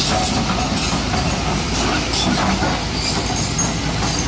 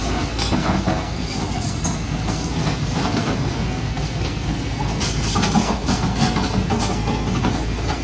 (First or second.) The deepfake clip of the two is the second